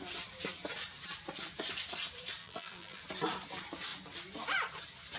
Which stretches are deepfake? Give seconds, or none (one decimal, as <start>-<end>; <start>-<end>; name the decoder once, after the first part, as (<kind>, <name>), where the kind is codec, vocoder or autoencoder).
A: 2.4-3.0 (vocoder, BigVGAN v2)

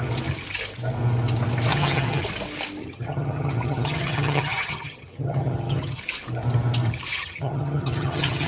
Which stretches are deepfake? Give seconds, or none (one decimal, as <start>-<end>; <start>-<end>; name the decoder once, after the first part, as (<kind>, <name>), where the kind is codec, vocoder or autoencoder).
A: 1.7-2.2 (vocoder, HiFi-GAN); 2.8-6.0; 7.1-8.5

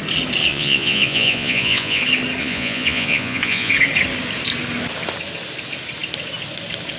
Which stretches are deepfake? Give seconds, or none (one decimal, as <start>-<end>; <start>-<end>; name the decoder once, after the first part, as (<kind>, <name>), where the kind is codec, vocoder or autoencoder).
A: 0.5-2.0 (vocoder, Vocos); 2.4-3.7